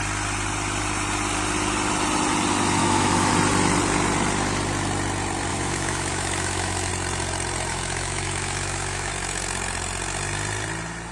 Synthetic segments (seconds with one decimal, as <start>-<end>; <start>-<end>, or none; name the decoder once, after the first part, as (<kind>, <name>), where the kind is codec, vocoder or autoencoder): 2.8-3.3 (autoencoder, DAC-VAE); 5.5-6.9; 7.7-9.1

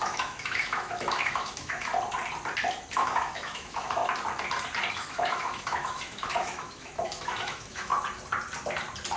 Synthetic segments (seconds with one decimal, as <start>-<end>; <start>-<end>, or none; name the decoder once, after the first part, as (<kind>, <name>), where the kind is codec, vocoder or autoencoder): 0.0-1.9 (autoencoder, DAC-VAE); 2.9-4.0; 4.9-7.9